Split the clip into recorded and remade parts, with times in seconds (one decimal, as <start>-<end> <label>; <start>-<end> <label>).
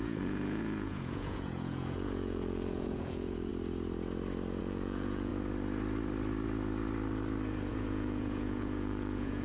0.0-3.5 remade; 3.5-4.6 recorded; 4.6-5.3 remade; 5.3-7.7 recorded; 7.7-9.4 remade